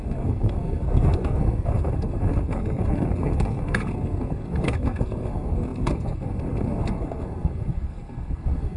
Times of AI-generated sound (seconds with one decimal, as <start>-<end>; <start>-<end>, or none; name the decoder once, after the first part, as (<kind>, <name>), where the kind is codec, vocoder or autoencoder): 0.0-8.8 (codec, SNAC)